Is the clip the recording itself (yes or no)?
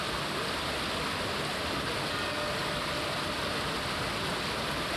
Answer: yes